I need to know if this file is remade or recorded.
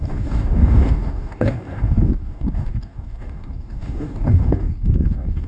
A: remade